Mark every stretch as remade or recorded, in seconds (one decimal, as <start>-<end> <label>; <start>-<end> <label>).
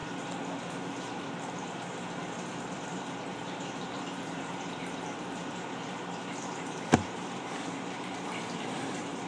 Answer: 0.0-1.0 recorded; 1.0-9.3 remade